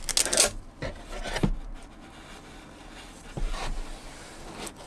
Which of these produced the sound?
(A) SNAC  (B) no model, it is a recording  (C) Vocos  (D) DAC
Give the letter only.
B